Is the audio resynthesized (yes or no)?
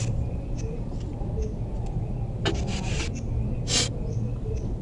no